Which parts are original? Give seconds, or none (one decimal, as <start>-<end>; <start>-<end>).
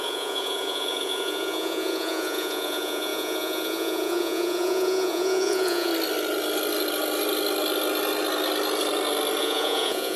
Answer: 5.9-9.4